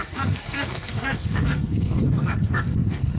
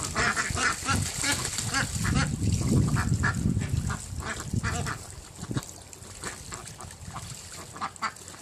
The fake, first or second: first